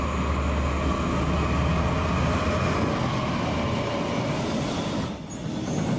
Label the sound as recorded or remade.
recorded